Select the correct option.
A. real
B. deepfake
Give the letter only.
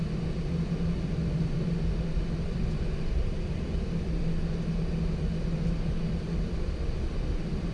A